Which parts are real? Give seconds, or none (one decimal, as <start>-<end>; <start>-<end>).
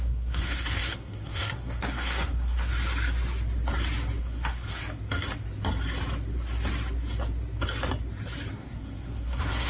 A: 2.7-4.2; 4.8-8.5